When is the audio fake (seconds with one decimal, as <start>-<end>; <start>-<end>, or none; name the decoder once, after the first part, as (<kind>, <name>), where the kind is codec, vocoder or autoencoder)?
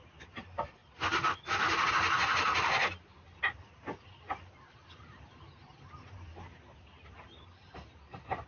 none